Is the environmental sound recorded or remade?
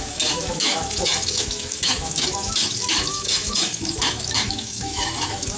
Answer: remade